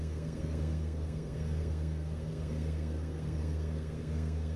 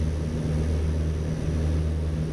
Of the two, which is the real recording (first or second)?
second